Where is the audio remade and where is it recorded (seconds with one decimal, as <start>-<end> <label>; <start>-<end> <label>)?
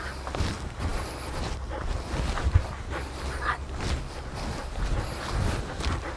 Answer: 0.0-6.2 recorded